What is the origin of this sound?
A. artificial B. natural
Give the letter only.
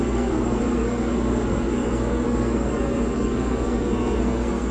A